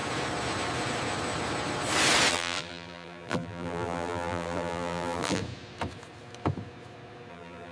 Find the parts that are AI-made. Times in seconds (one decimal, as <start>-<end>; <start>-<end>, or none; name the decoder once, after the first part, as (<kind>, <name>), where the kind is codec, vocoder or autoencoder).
2.3-5.4 (vocoder, BigVGAN v2); 7.3-7.7